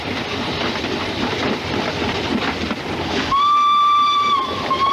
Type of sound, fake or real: real